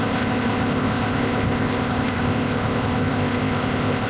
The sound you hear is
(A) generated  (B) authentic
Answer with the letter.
A